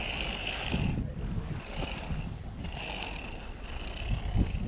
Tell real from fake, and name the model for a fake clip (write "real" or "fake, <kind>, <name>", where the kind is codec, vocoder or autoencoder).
real